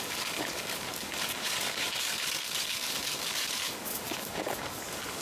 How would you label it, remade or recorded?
remade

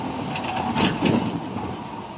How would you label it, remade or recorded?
recorded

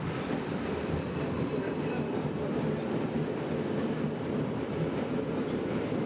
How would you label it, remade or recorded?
recorded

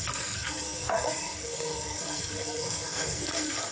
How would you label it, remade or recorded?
remade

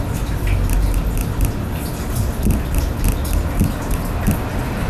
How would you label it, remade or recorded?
recorded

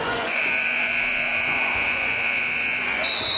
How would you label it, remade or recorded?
remade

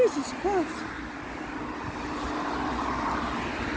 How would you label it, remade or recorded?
recorded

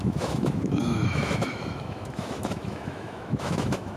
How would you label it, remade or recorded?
remade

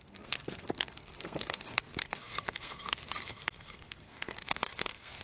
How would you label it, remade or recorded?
remade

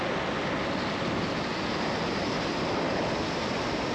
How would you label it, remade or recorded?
recorded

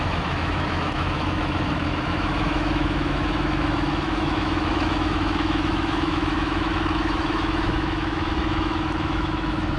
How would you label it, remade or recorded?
remade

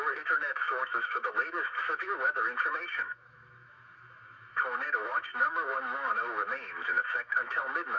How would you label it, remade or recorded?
remade